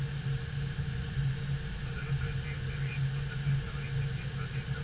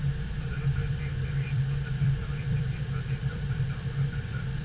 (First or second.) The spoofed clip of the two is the second